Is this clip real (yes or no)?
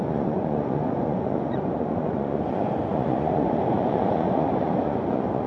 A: no